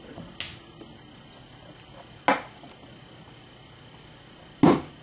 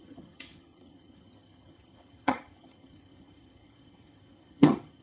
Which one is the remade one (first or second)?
second